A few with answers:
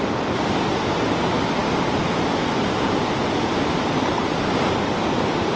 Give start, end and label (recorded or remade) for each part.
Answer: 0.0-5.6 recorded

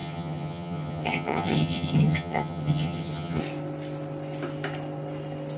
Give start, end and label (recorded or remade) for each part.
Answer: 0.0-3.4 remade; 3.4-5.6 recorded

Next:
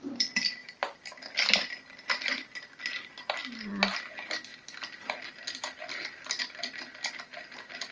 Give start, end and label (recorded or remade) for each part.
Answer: 0.0-7.9 recorded

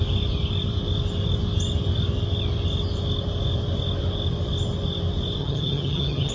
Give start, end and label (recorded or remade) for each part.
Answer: 0.0-5.4 recorded; 5.4-6.3 remade

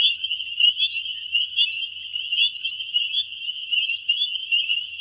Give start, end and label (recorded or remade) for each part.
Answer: 0.0-5.0 recorded

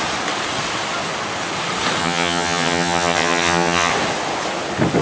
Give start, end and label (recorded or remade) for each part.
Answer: 0.0-2.0 recorded; 2.0-3.9 remade; 3.9-5.0 recorded

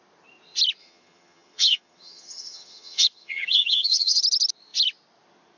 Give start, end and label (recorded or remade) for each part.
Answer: 0.0-0.8 recorded; 0.8-4.2 remade; 4.2-5.6 recorded